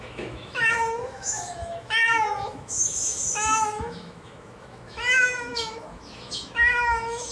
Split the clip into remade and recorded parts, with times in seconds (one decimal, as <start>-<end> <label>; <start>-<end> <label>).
0.0-7.3 remade